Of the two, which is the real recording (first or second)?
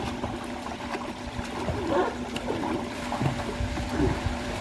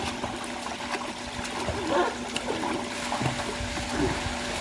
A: second